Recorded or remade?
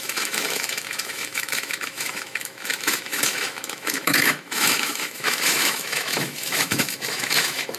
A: remade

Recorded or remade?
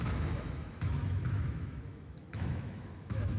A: remade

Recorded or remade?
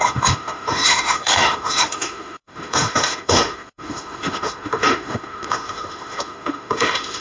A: remade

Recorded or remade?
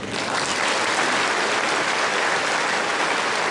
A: recorded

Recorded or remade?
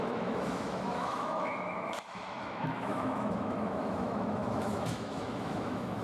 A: remade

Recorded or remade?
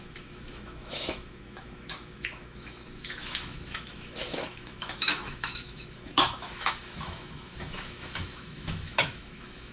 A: remade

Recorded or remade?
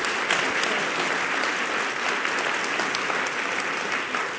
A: recorded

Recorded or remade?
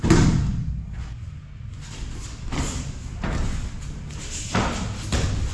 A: recorded